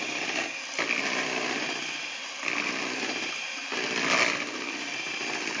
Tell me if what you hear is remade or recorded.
recorded